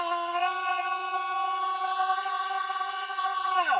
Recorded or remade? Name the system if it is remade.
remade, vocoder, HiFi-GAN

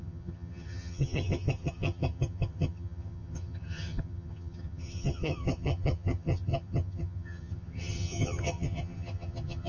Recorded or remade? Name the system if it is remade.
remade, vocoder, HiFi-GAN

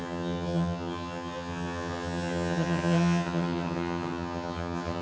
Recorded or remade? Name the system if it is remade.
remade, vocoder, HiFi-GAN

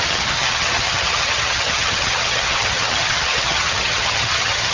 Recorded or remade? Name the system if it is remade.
remade, vocoder, HiFi-GAN